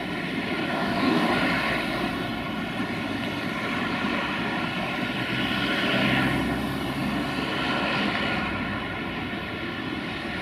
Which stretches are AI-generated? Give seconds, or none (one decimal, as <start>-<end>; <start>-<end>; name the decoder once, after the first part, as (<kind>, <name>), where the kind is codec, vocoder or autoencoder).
0.6-1.3 (codec, DAC)